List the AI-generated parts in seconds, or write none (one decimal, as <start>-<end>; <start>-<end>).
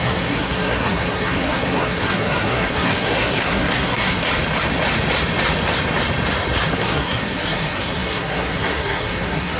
0.0-4.2; 6.7-9.6